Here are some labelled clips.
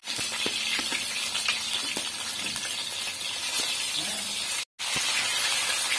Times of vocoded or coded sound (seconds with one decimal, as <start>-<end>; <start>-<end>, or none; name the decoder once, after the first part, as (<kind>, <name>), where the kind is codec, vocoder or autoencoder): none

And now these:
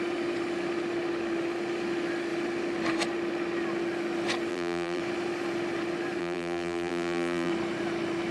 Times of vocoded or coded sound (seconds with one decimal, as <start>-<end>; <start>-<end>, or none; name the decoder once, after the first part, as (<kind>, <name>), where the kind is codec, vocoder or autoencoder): 4.5-5.0 (vocoder, BigVGAN v2); 6.2-7.5

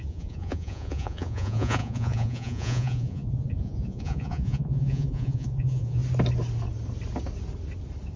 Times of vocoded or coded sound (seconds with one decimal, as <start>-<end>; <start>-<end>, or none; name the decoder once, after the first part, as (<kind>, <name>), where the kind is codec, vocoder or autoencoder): 0.0-6.0 (vocoder, Vocos)

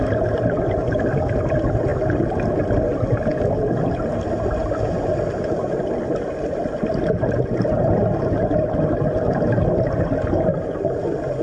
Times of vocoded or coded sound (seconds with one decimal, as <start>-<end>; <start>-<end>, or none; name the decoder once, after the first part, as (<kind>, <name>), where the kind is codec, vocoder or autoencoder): none

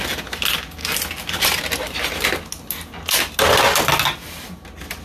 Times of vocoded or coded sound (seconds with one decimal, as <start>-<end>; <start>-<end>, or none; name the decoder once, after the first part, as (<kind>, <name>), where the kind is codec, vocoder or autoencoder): none

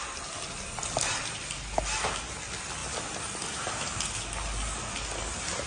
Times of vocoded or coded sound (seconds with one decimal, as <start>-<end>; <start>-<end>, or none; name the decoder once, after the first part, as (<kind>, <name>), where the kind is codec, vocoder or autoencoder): 2.8-4.0 (vocoder, BigVGAN v2)

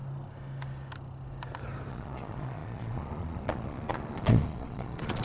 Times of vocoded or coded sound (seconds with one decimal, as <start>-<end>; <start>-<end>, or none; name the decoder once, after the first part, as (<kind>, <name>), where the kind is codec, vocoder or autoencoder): 1.9-5.2 (vocoder, Vocos)

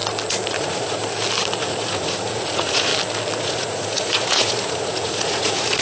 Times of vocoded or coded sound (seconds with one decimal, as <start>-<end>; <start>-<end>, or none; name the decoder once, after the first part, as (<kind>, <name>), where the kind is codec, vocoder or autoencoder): 0.6-1.0 (vocoder, Vocos); 1.6-2.9; 3.4-5.8